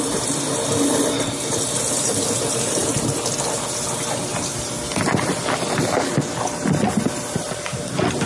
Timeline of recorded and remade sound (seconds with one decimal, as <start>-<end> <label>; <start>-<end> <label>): 0.0-8.3 recorded